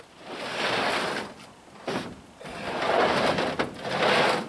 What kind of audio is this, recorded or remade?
recorded